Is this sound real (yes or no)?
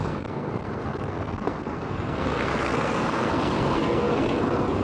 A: no